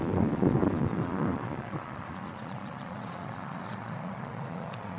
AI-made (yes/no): yes